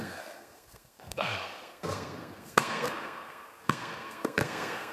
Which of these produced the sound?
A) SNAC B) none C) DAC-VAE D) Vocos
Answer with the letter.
A